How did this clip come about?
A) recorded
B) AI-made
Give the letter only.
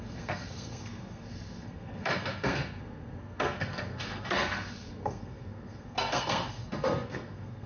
B